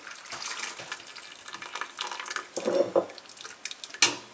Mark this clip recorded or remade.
recorded